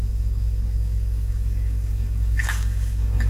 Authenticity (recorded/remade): remade